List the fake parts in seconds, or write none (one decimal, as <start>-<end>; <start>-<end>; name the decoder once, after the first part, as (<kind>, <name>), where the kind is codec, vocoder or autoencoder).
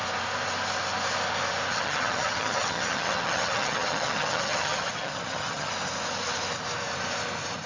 1.7-5.7 (vocoder, HiFi-GAN)